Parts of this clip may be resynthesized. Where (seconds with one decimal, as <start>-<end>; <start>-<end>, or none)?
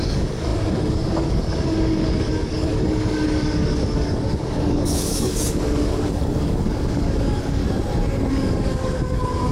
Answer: 0.0-7.6; 8.3-9.5